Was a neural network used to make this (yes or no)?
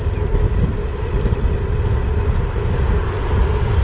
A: no